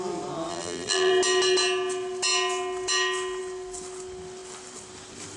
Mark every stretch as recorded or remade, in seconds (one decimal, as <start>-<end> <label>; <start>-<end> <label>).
0.0-0.5 recorded; 0.5-1.1 remade; 1.1-5.4 recorded